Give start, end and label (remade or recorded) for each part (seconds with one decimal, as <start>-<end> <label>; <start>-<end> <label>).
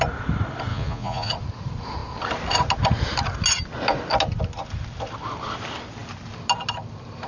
0.0-0.7 recorded; 0.7-1.3 remade; 1.3-7.3 recorded